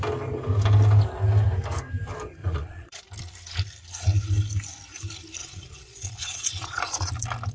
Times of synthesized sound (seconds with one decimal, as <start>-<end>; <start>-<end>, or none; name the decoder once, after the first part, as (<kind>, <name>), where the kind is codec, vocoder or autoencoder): 2.4-3.0 (vocoder, Vocos); 5.4-7.1